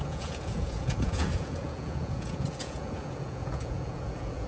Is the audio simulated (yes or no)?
yes